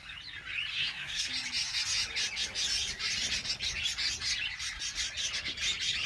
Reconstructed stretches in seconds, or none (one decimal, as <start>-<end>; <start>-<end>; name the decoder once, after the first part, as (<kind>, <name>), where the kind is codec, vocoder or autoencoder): 0.7-1.3 (codec, SNAC)